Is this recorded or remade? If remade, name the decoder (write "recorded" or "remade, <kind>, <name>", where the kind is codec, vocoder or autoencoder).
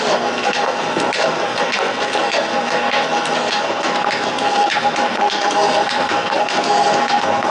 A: remade, codec, SNAC